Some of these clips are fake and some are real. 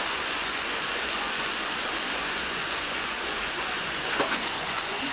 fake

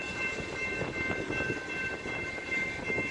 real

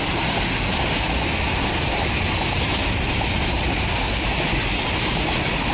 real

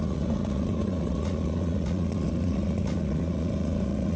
fake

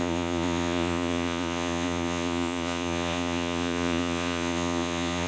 fake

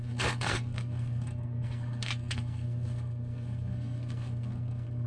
fake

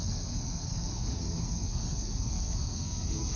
fake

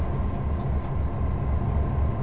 real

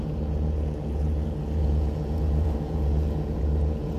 fake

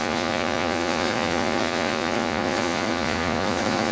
fake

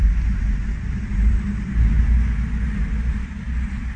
fake